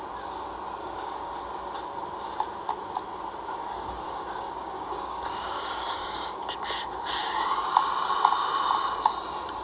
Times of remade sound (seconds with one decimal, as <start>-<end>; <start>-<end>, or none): 0.8-1.3; 3.6-6.3